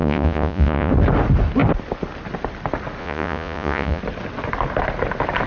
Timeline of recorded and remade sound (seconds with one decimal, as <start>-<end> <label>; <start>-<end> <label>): 0.0-0.9 remade; 0.9-3.0 recorded; 3.0-4.0 remade; 4.0-5.5 recorded